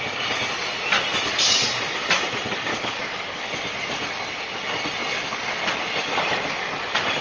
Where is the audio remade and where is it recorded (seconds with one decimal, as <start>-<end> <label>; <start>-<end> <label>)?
0.0-1.2 recorded; 1.2-1.8 remade; 1.8-2.7 recorded; 2.7-3.5 remade; 3.5-7.2 recorded